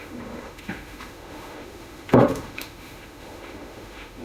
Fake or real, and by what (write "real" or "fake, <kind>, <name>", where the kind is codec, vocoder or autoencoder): fake, autoencoder, DAC-VAE